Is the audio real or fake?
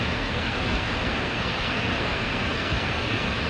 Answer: fake